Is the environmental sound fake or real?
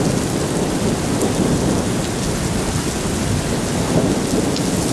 real